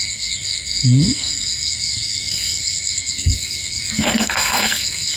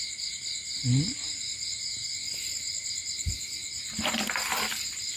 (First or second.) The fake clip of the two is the first